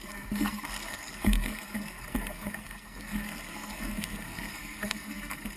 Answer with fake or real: fake